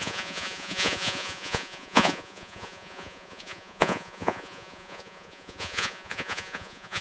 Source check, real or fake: fake